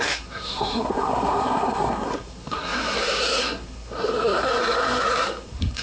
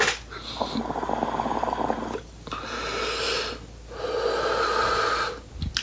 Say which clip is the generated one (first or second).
first